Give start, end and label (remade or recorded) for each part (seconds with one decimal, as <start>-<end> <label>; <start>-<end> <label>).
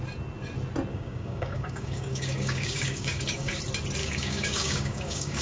0.0-0.9 recorded; 0.9-3.6 remade; 3.6-4.0 recorded; 4.0-5.4 remade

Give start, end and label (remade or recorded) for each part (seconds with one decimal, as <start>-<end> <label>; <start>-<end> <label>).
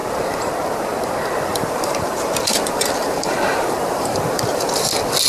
0.0-0.5 remade; 0.5-1.5 recorded; 1.5-4.7 remade; 4.7-5.3 recorded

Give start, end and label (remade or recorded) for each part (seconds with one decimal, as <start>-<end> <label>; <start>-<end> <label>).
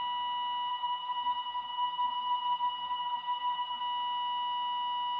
0.0-0.7 recorded; 0.7-3.8 remade; 3.8-5.2 recorded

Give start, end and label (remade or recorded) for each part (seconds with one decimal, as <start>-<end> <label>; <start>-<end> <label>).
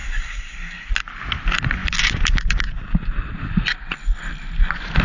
0.0-0.9 remade; 0.9-5.0 recorded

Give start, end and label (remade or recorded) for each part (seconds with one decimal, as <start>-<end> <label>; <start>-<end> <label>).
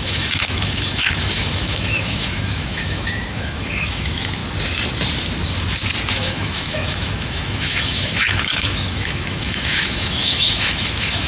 0.0-4.4 remade; 4.4-6.1 recorded; 6.1-11.3 remade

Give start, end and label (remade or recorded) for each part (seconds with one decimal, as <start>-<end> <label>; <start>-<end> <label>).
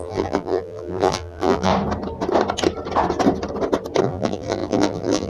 0.0-1.7 remade; 1.7-4.0 recorded; 4.0-5.3 remade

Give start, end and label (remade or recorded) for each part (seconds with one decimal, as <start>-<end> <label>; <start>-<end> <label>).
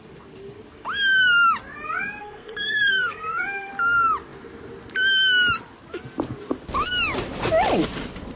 0.0-2.2 recorded; 2.2-3.7 remade; 3.7-8.3 recorded